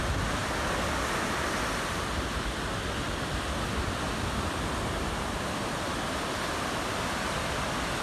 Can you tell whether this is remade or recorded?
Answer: recorded